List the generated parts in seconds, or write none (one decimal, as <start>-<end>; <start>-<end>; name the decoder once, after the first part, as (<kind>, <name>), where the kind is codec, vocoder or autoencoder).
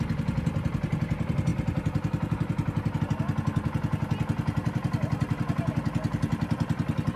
1.5-3.0 (vocoder, BigVGAN v2)